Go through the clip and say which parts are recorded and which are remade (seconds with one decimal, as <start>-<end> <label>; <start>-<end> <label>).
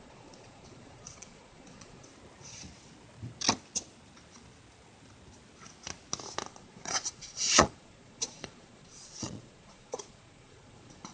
0.0-2.1 remade; 2.1-6.5 recorded; 6.5-11.1 remade